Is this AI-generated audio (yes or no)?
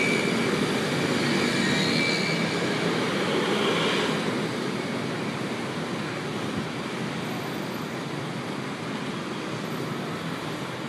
no